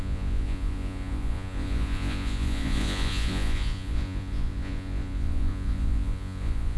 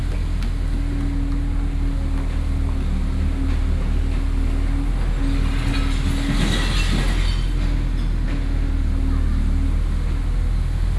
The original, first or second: second